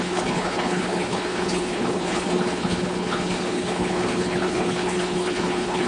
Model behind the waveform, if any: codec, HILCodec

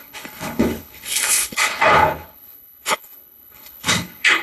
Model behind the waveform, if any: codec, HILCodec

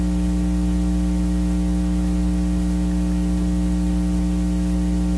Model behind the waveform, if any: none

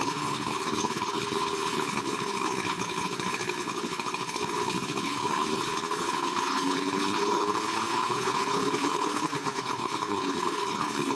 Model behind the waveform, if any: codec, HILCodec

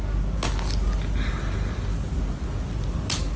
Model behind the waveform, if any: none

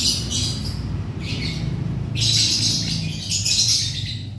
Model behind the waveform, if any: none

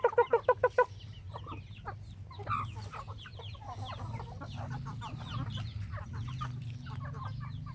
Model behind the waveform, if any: none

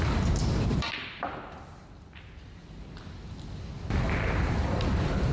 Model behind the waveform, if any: none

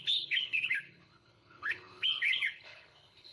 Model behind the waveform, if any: codec, HILCodec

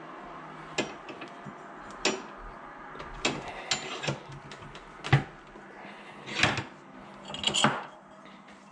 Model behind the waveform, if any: none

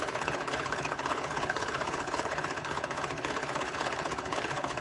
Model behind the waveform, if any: codec, HILCodec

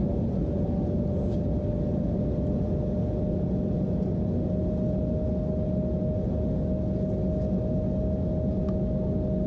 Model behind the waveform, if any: none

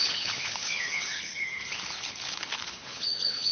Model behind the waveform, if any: codec, HILCodec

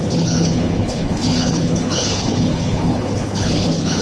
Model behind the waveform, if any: codec, HILCodec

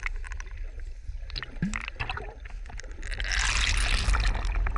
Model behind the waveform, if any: none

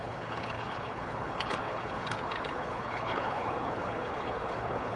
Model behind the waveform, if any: codec, HILCodec